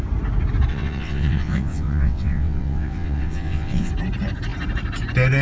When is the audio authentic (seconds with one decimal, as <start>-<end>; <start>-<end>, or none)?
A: 0.0-0.7; 3.9-5.4